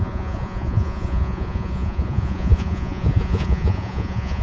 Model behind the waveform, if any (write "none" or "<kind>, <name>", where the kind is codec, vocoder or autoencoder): vocoder, Vocos